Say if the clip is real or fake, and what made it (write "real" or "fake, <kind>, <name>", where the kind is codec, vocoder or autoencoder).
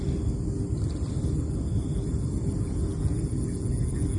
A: real